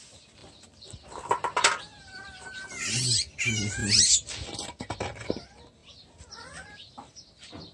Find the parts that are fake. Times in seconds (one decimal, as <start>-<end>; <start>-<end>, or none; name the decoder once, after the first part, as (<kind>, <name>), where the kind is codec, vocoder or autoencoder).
0.4-2.9 (vocoder, BigVGAN v2)